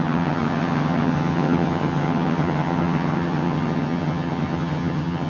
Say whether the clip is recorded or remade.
remade